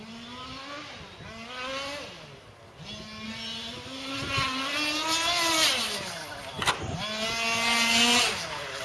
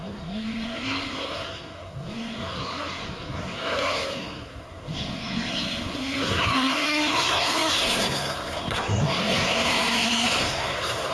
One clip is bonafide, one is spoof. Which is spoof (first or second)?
second